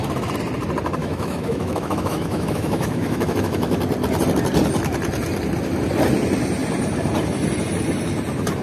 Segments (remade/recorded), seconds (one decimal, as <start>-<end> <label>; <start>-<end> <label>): 0.0-1.0 recorded; 1.0-3.8 remade; 3.8-8.6 recorded